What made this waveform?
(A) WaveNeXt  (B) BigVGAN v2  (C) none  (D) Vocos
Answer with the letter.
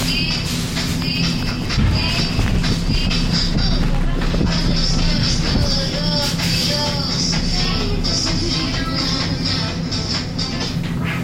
C